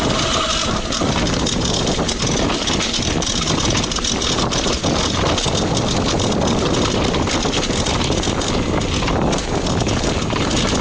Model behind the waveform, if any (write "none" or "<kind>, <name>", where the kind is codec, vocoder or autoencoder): none